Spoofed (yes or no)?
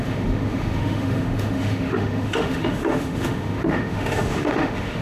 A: yes